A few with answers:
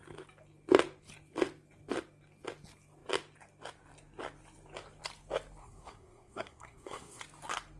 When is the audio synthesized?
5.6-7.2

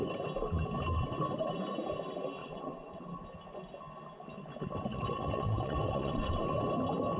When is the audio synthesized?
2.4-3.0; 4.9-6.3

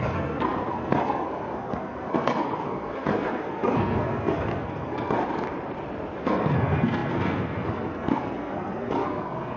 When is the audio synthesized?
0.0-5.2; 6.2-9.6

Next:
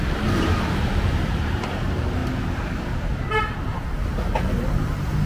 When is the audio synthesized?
0.0-2.2; 3.6-5.3

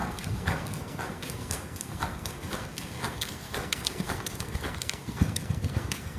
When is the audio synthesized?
0.0-6.2

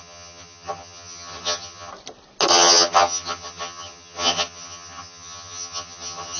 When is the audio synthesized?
0.0-1.9; 2.5-6.4

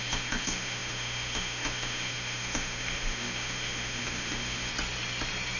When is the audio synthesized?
0.0-4.7